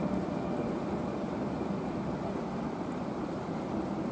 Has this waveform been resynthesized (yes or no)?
yes